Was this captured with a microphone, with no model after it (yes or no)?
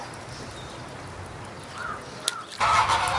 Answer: yes